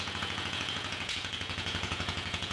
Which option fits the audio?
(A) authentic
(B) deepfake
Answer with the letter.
B